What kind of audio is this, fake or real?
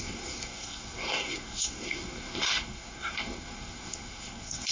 fake